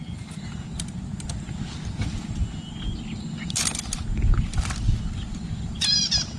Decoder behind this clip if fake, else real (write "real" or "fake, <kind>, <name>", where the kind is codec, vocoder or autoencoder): real